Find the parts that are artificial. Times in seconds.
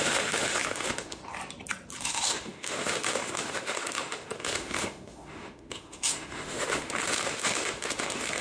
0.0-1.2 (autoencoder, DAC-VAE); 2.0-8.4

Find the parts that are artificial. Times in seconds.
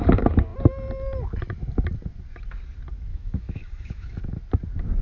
3.1-4.2 (autoencoder, DAC-VAE)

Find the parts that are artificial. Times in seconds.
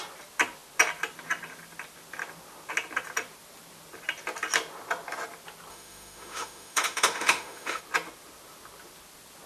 5.7-7.8 (autoencoder, DAC-VAE)